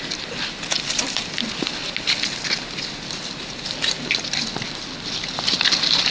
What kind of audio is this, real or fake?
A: real